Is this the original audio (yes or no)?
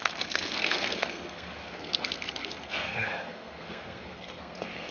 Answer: no